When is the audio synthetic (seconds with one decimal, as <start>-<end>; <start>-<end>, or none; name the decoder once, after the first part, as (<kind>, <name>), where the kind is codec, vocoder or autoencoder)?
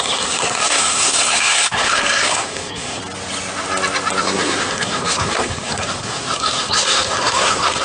0.0-3.0 (codec, SNAC); 4.2-7.8